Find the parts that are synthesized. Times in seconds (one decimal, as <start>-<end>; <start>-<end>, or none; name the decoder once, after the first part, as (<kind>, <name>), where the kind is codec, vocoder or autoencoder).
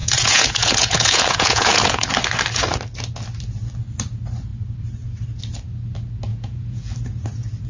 0.0-2.1 (vocoder, Vocos); 6.3-6.9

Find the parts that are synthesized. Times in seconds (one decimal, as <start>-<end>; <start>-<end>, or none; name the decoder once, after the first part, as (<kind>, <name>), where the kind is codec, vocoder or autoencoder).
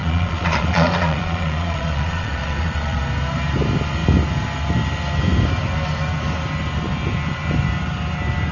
0.0-3.0 (vocoder, Vocos)